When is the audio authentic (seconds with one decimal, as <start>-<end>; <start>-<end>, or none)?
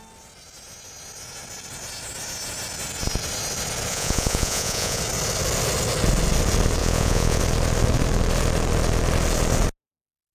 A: 0.0-3.9; 5.0-6.8; 7.4-10.3